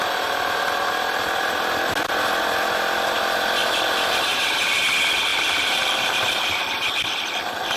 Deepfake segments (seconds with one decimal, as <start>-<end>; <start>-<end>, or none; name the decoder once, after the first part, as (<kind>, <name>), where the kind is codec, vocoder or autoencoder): 3.6-4.8 (vocoder, BigVGAN v2); 5.3-6.8